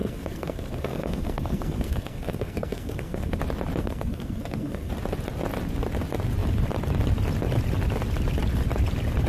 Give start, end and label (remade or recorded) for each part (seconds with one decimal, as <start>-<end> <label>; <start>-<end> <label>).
0.0-3.4 remade; 3.4-3.8 recorded; 3.8-4.9 remade; 4.9-9.3 recorded

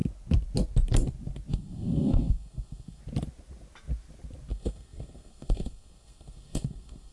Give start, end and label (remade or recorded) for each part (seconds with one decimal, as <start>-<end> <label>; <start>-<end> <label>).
0.0-1.5 recorded; 1.5-3.0 remade; 3.0-4.5 recorded; 4.5-7.1 remade

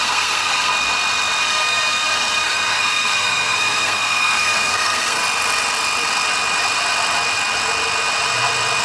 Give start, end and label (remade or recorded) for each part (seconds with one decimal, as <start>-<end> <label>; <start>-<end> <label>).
0.0-0.7 remade; 0.7-1.4 recorded; 1.4-5.2 remade; 5.2-8.8 recorded

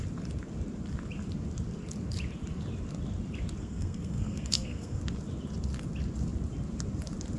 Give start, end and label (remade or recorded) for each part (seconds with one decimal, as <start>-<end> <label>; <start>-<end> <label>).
0.0-3.6 recorded; 3.6-5.0 remade; 5.0-7.4 recorded